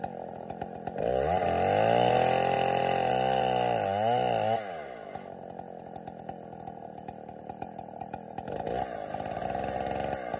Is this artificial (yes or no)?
no